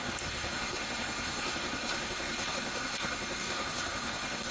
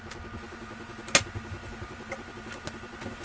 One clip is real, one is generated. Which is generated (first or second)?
first